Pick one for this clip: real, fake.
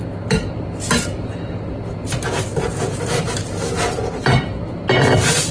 real